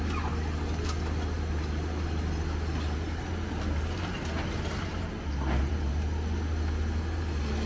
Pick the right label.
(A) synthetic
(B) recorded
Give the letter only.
B